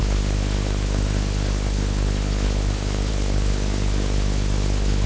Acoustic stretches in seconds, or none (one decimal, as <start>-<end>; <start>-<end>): none